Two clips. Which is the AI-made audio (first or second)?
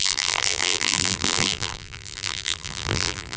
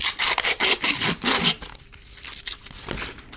first